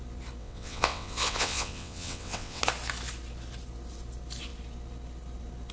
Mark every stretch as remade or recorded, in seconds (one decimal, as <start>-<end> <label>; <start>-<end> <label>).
0.0-0.4 recorded; 0.4-2.6 remade; 2.6-5.7 recorded